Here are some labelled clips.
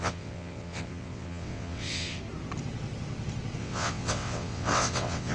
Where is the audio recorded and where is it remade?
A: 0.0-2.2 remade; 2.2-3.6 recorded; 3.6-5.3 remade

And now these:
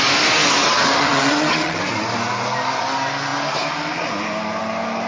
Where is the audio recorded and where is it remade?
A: 0.0-0.6 recorded; 0.6-1.8 remade; 1.8-5.1 recorded

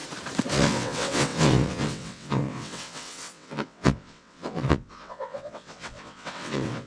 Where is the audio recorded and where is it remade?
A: 0.0-0.5 recorded; 0.5-6.9 remade

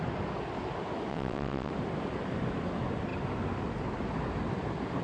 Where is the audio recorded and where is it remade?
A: 0.0-1.1 recorded; 1.1-1.7 remade; 1.7-5.0 recorded